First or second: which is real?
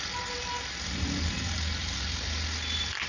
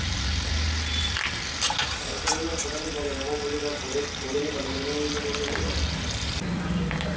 first